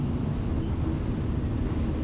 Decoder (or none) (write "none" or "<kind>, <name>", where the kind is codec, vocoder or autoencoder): none